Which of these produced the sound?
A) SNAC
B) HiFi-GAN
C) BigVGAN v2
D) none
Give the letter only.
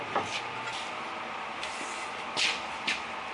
D